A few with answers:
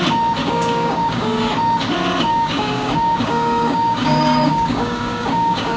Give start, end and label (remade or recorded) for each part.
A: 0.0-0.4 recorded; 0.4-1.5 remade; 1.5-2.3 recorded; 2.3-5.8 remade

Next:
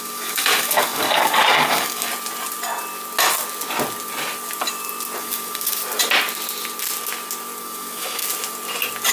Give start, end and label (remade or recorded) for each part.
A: 0.0-2.1 remade; 2.1-5.2 recorded; 5.2-5.8 remade; 5.8-7.6 recorded; 7.6-8.2 remade; 8.2-9.1 recorded

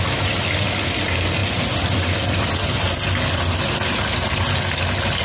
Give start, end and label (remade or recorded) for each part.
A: 0.0-5.2 recorded